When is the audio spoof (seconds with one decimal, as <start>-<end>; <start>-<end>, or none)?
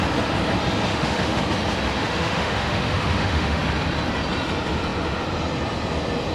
0.9-1.4; 2.0-3.6